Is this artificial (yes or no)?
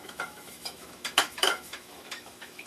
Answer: yes